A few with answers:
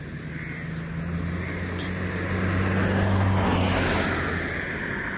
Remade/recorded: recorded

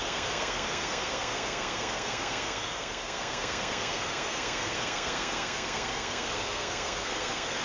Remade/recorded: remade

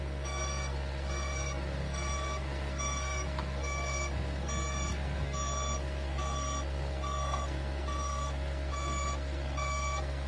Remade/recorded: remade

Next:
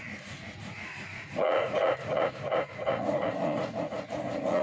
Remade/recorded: remade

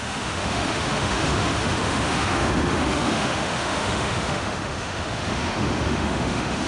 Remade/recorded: remade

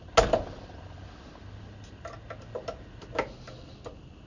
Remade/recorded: recorded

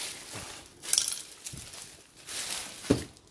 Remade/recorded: recorded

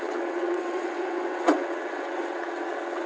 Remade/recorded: remade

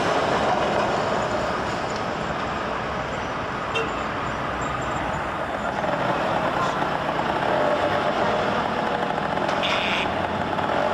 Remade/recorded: recorded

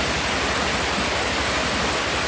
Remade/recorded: recorded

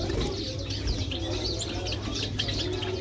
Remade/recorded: recorded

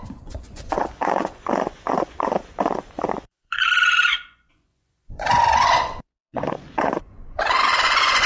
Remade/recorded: remade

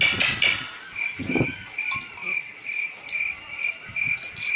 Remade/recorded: recorded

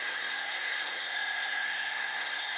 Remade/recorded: remade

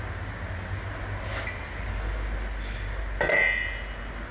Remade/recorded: recorded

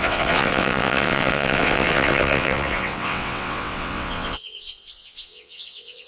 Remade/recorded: remade